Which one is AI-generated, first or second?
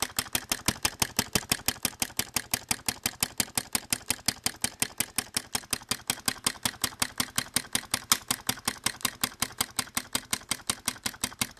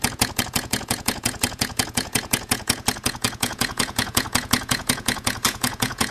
second